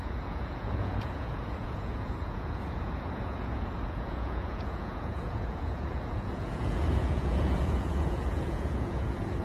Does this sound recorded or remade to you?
remade